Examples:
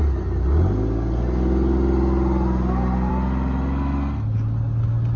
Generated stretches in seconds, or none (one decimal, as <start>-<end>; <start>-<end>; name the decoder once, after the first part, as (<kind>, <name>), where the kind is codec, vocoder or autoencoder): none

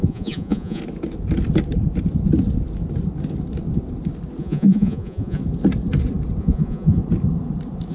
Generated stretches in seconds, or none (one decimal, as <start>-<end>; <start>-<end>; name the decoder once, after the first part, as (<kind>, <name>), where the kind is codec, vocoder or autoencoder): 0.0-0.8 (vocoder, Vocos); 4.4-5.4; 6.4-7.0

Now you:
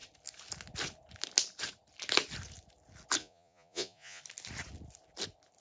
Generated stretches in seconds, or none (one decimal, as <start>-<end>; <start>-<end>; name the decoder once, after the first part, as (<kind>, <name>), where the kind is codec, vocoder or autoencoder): 3.2-4.2 (vocoder, Vocos)

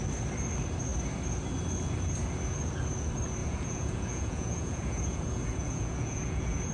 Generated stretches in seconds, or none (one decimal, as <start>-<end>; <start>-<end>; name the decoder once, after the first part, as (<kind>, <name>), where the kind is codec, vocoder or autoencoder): 3.4-6.7 (vocoder, Vocos)

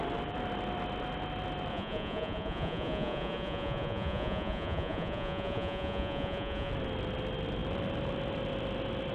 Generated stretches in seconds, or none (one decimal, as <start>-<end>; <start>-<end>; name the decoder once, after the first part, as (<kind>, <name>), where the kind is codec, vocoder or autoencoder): 1.7-6.7 (vocoder, Vocos)

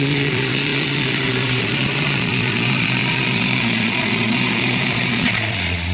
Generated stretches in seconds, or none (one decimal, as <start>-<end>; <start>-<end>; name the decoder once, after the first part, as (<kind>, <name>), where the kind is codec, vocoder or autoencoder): 0.0-5.9 (vocoder, Vocos)

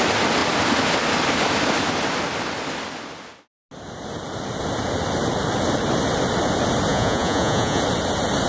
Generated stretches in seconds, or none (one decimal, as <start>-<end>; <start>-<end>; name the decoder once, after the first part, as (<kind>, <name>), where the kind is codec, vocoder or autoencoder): 6.9-7.8 (vocoder, Vocos)

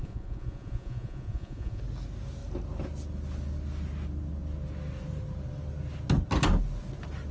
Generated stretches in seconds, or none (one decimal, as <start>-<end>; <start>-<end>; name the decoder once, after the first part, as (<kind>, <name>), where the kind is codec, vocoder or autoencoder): 0.0-1.8 (vocoder, Vocos)